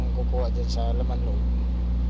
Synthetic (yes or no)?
no